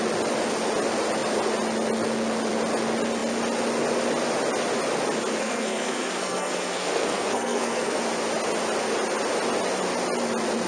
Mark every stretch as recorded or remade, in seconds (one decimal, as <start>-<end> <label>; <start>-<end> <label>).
0.0-5.4 recorded; 5.4-8.0 remade; 8.0-10.7 recorded